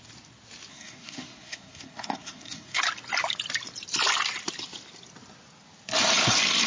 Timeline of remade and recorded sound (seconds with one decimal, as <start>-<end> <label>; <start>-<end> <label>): 0.0-0.7 recorded; 0.7-2.8 remade; 2.8-6.7 recorded